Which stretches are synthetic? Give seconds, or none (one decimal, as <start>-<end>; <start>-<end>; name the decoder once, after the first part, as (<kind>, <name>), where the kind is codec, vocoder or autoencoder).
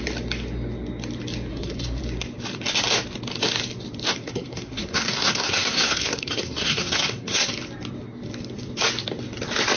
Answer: 1.5-2.0 (codec, SNAC); 4.1-7.5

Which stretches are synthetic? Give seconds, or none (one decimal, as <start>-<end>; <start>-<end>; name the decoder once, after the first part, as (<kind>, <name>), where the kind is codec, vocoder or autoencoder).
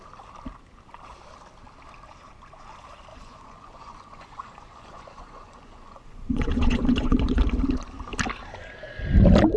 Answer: 3.1-7.4 (vocoder, Vocos)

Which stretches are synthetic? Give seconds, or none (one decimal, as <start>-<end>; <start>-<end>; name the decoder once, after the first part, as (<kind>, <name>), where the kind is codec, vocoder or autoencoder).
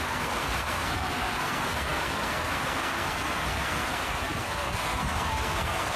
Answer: 0.0-6.0 (codec, SNAC)